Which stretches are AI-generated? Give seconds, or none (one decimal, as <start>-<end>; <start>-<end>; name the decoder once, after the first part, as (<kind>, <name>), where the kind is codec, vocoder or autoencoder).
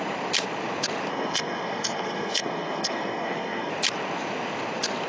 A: 1.1-3.7 (codec, SNAC)